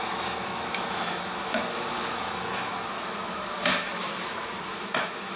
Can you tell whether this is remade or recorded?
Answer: remade